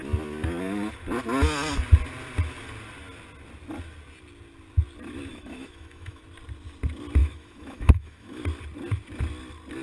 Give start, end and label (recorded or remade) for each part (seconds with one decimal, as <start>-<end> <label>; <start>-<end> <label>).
0.0-5.3 recorded; 5.3-6.2 remade; 6.2-7.2 recorded; 7.2-8.4 remade; 8.4-9.8 recorded